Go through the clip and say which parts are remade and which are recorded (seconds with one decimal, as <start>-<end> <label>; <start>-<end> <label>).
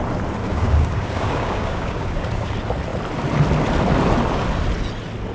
0.0-0.4 recorded; 0.4-2.5 remade; 2.5-5.3 recorded